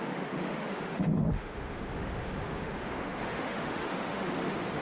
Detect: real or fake fake